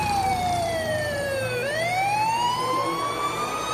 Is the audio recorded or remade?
remade